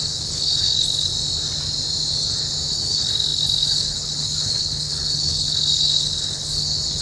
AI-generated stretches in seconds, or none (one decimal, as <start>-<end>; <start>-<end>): 0.0-1.1; 2.7-7.0